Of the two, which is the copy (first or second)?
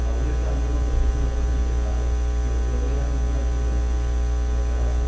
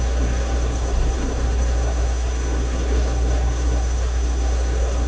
second